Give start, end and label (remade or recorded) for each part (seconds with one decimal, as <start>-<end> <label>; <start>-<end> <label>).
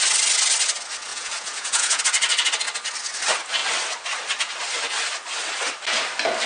0.0-1.1 recorded; 1.1-2.0 remade; 2.0-6.5 recorded